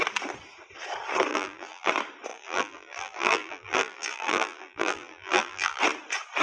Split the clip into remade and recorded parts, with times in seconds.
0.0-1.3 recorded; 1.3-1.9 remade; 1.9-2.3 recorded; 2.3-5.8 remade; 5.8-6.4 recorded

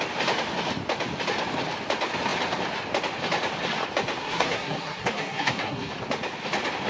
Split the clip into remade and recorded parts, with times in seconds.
0.0-4.2 recorded; 4.2-5.9 remade; 5.9-6.9 recorded

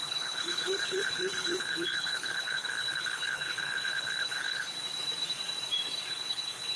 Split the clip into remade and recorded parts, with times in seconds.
0.0-4.7 remade; 4.7-6.1 recorded; 6.1-6.8 remade

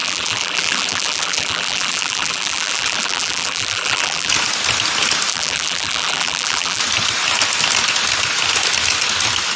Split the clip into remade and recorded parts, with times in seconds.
0.0-4.3 remade; 4.3-5.3 recorded; 5.3-6.8 remade; 6.8-9.6 recorded

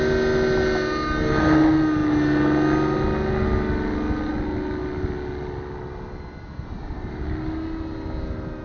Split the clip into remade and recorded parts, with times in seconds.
0.0-8.6 recorded

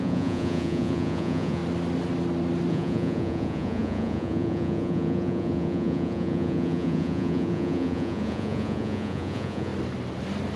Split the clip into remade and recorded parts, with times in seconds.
0.0-1.6 remade; 1.6-2.7 recorded; 2.7-9.7 remade; 9.7-10.6 recorded

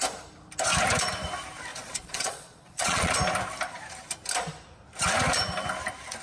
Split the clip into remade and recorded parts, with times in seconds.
0.0-1.7 recorded; 1.7-3.1 remade; 3.1-6.2 recorded